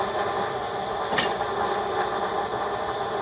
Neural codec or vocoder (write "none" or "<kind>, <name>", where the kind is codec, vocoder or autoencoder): none